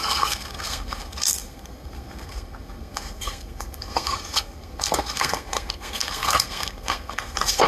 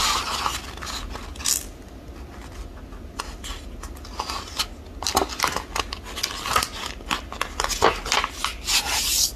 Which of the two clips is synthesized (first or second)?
first